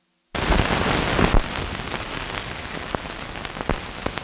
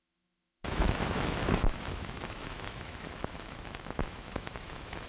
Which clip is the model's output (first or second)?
second